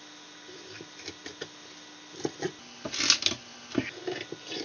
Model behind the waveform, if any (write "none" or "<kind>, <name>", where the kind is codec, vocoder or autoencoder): none